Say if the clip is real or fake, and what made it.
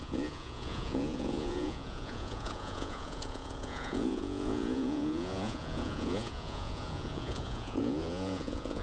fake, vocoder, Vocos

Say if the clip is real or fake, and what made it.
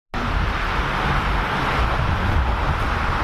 real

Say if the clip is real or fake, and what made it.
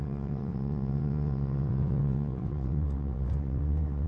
fake, vocoder, WaveNeXt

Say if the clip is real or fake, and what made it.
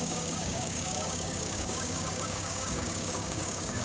fake, codec, DAC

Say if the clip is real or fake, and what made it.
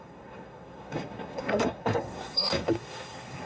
fake, codec, SNAC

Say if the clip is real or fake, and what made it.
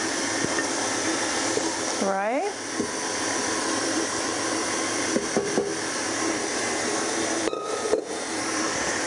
fake, vocoder, BigVGAN v2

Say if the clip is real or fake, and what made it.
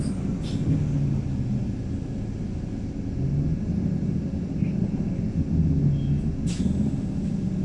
real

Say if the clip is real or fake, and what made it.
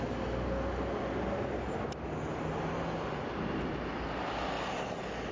real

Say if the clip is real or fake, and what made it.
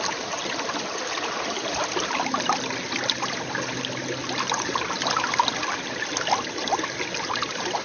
real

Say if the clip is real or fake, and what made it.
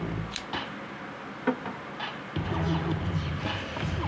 real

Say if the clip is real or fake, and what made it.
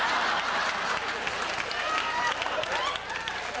real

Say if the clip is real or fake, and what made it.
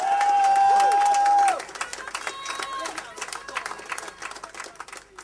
real